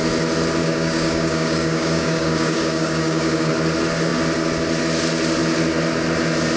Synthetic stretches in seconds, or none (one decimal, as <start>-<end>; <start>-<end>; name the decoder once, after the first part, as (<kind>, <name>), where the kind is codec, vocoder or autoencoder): 0.6-3.5 (codec, DAC)